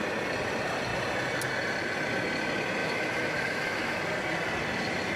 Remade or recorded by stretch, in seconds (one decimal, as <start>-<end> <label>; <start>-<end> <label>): 0.0-2.8 recorded; 2.8-4.0 remade; 4.0-5.2 recorded